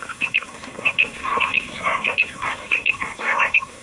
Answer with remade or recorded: remade